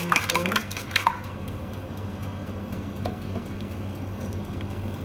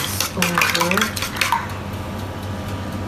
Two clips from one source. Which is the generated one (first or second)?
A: first